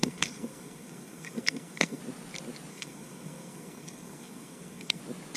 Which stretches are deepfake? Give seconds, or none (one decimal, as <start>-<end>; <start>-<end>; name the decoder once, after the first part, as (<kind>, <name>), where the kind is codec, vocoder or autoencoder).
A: 0.0-2.0 (codec, SNAC); 2.7-5.0